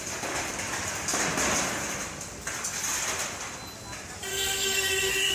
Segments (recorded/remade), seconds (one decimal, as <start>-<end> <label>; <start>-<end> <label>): 0.0-4.3 recorded; 4.3-5.3 remade

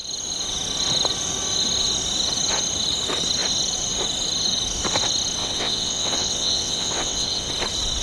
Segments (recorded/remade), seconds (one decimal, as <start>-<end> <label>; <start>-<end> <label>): 0.0-5.4 recorded; 5.4-7.5 remade; 7.5-8.0 recorded

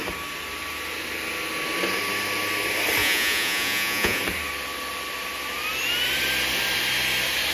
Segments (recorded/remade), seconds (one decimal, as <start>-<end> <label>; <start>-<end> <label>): 0.0-3.0 recorded; 3.0-4.2 remade; 4.2-7.5 recorded

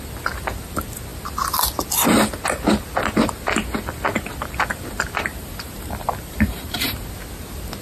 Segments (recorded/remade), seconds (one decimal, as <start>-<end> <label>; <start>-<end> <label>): 0.0-5.3 recorded; 5.3-7.1 remade; 7.1-7.8 recorded

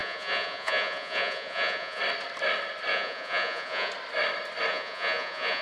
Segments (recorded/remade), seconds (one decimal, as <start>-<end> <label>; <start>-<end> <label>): 0.0-2.0 remade; 2.0-2.9 recorded; 2.9-3.9 remade; 3.9-4.7 recorded; 4.7-5.6 remade

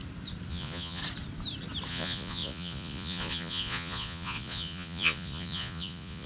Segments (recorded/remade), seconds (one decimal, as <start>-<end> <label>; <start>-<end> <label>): 0.0-0.5 recorded; 0.5-1.0 remade; 1.0-1.9 recorded; 1.9-6.3 remade

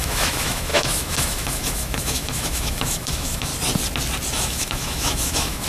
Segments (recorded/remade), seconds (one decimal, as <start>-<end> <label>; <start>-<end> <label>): 0.0-3.5 remade; 3.5-4.3 recorded; 4.3-5.7 remade